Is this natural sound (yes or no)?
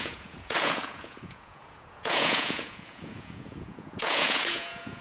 no